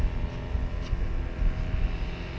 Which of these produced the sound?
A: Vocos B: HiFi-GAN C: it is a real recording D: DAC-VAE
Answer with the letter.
C